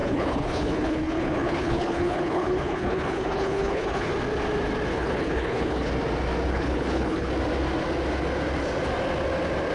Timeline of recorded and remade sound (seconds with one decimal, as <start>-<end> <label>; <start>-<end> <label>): 0.0-4.1 remade; 4.1-4.9 recorded; 4.9-5.9 remade; 5.9-6.5 recorded; 6.5-7.3 remade; 7.3-9.7 recorded